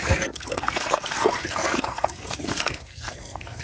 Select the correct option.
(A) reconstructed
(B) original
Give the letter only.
A